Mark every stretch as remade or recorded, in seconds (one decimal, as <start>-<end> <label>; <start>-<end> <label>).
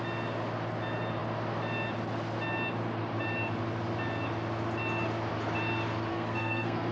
0.0-6.1 recorded; 6.1-6.9 remade